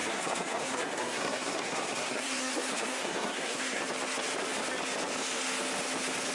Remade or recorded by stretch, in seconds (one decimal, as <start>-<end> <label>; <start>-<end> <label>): 0.0-3.8 remade; 3.8-6.3 recorded